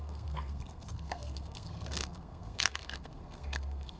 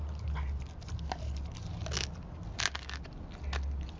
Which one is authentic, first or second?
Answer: second